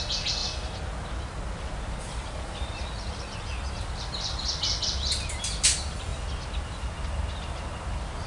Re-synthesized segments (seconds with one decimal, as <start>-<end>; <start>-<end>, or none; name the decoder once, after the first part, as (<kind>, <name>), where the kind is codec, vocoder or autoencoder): none